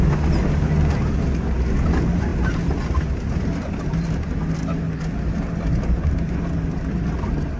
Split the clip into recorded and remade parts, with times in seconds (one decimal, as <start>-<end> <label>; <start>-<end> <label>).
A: 0.0-7.6 recorded